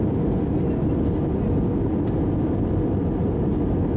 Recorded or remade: recorded